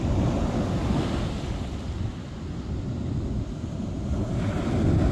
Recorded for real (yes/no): yes